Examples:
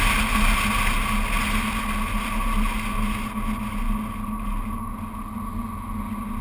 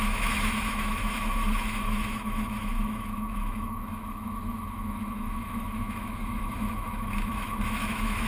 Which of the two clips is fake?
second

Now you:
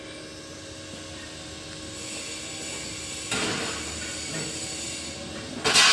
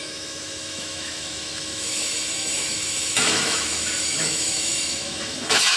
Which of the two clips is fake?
second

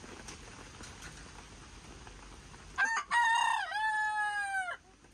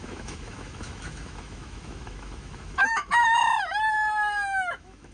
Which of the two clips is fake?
second